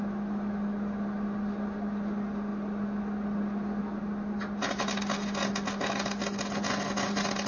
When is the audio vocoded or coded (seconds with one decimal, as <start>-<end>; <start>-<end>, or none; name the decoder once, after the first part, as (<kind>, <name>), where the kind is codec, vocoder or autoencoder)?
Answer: none